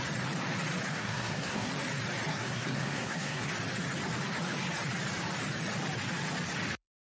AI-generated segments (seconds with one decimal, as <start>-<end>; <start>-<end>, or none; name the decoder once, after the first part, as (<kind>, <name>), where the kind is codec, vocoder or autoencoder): 0.9-1.7 (codec, SNAC); 2.3-3.5